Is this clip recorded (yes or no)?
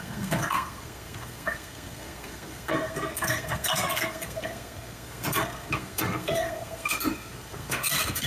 no